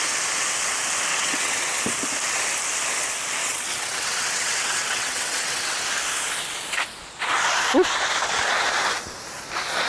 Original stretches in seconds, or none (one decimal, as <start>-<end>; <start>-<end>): 0.0-1.1; 1.8-3.4; 5.8-9.9